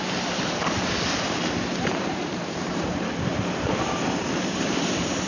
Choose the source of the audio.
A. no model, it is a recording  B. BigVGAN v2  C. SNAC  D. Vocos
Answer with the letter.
B